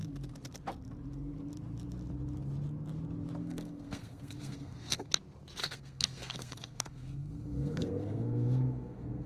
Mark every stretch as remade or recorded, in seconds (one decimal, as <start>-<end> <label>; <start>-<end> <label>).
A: 0.0-3.4 recorded; 3.4-5.1 remade; 5.1-5.6 recorded; 5.6-9.3 remade